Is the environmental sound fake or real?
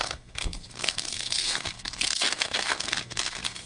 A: fake